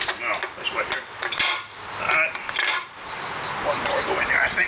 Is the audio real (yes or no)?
yes